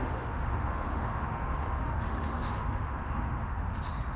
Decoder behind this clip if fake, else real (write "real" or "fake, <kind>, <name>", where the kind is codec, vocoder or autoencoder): fake, autoencoder, DAC-VAE